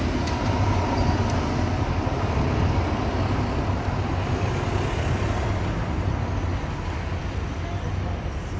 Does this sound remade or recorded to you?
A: recorded